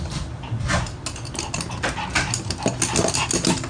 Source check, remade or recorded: recorded